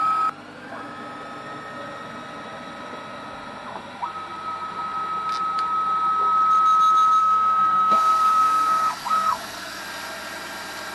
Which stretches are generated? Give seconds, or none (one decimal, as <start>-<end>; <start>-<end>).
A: 7.2-9.8